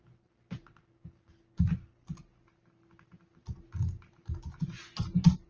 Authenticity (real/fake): real